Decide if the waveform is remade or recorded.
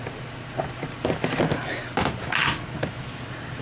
recorded